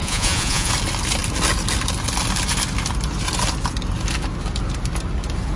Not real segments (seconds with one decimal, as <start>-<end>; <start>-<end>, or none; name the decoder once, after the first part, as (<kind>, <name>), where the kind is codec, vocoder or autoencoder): 0.0-0.7 (vocoder, Vocos)